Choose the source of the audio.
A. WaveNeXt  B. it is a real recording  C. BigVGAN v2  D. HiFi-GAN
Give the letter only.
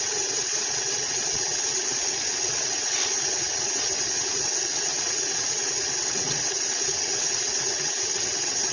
A